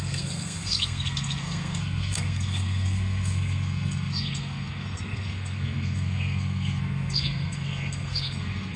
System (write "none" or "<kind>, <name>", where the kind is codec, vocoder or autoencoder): codec, SNAC